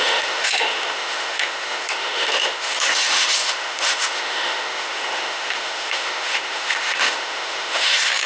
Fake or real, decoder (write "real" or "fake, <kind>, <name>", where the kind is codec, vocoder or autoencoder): fake, autoencoder, DAC-VAE